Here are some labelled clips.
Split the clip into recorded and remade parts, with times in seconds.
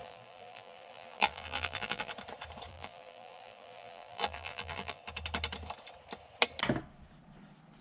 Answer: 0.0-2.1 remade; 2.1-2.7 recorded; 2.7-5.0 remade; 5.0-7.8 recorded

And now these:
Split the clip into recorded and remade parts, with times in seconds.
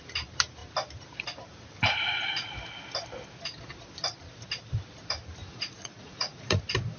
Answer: 0.0-5.4 recorded; 5.4-6.6 remade; 6.6-7.0 recorded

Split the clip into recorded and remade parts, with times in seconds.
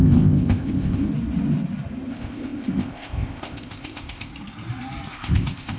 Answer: 0.0-1.1 remade; 1.1-2.1 recorded; 2.1-4.3 remade; 4.3-5.1 recorded; 5.1-5.8 remade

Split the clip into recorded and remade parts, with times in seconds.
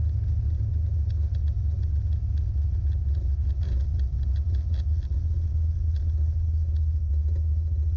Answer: 0.0-8.0 recorded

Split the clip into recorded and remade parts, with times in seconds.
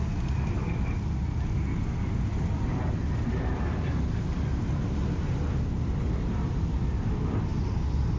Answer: 0.0-8.2 recorded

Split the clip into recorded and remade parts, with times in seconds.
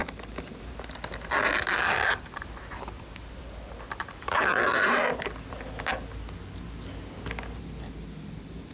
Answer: 0.0-8.7 recorded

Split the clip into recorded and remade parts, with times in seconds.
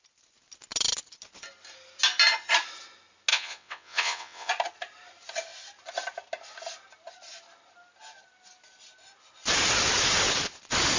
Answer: 0.0-3.3 recorded; 3.3-4.5 remade; 4.5-11.0 recorded